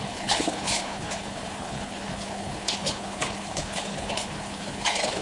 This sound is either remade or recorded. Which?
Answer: remade